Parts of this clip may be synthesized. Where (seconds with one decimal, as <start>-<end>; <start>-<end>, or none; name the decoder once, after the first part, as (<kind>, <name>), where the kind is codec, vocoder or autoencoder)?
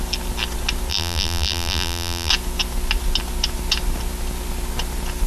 0.9-2.3 (vocoder, BigVGAN v2)